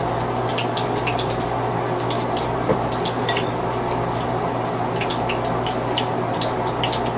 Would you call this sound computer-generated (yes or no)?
no